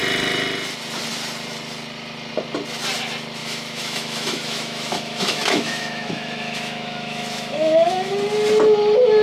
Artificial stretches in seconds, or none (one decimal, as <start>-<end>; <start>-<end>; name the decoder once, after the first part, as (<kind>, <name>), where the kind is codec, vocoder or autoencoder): 3.4-8.1 (autoencoder, DAC-VAE)